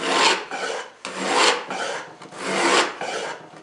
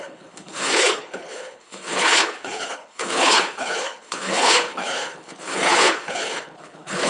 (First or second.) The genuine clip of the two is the first